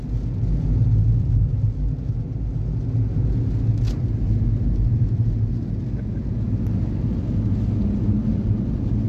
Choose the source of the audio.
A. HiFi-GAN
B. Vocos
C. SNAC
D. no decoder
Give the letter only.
D